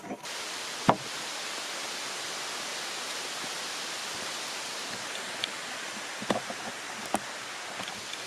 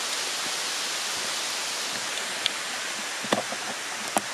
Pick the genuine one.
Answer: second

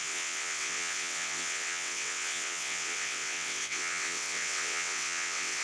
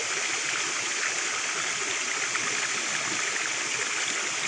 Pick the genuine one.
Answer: second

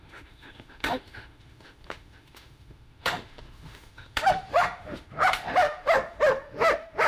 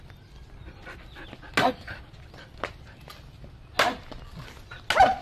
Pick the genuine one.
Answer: second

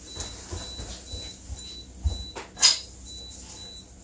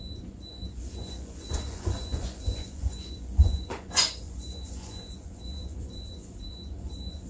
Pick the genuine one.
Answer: first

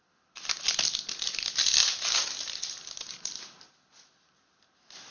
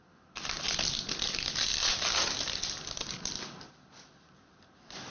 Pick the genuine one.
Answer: first